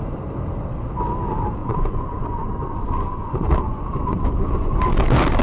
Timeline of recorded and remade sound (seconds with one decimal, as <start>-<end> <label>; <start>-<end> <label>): 0.0-1.6 recorded; 1.6-4.8 remade; 4.8-5.4 recorded

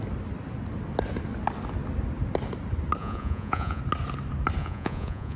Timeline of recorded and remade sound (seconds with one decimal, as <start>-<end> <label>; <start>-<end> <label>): 0.0-3.0 recorded; 3.0-3.8 remade; 3.8-4.6 recorded; 4.6-5.4 remade

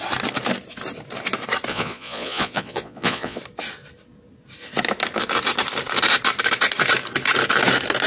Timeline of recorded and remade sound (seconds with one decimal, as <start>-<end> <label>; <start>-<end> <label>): 0.0-1.7 recorded; 1.7-3.4 remade; 3.4-8.1 recorded

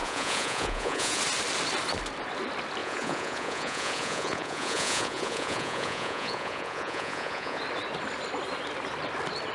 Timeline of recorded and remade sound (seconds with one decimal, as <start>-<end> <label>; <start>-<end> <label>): 0.0-1.2 remade; 1.2-2.8 recorded; 2.8-7.6 remade; 7.6-9.5 recorded

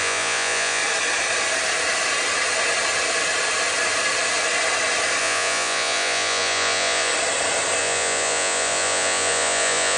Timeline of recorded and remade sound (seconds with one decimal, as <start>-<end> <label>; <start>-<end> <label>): 0.0-0.8 remade; 0.8-5.2 recorded; 5.2-7.1 remade; 7.1-7.8 recorded; 7.8-10.0 remade